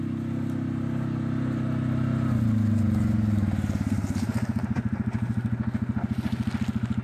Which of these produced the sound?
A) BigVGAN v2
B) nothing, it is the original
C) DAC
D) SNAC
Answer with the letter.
B